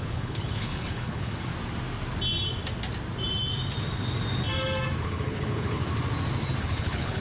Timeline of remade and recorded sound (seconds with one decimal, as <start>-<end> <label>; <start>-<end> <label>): 0.0-1.5 remade; 1.5-5.0 recorded; 5.0-5.8 remade; 5.8-6.6 recorded; 6.6-7.2 remade

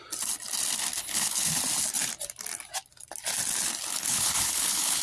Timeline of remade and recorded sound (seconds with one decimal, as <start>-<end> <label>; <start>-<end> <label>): 0.0-1.0 recorded; 1.0-1.5 remade; 1.5-3.9 recorded; 3.9-5.0 remade